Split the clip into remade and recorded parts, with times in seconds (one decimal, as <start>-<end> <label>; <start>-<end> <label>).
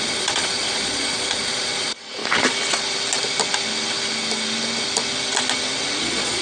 0.0-2.2 remade; 2.2-6.0 recorded; 6.0-6.4 remade